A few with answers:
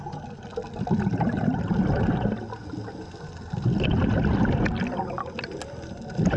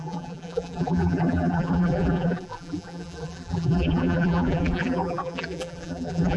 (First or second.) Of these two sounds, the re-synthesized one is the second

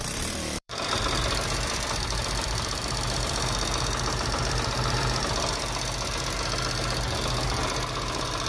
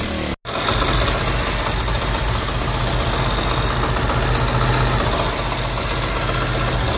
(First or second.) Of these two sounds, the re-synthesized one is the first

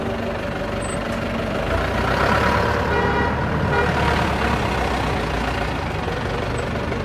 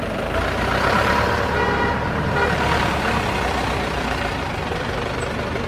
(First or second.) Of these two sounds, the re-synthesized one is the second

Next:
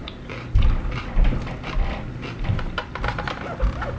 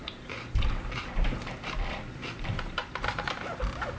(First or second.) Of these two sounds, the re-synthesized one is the second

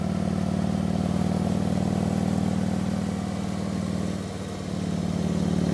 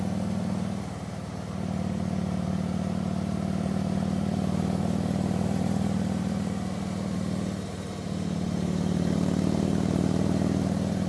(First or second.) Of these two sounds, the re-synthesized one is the second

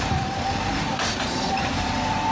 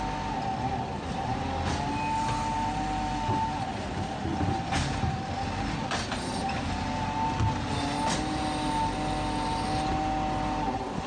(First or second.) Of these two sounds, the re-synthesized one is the first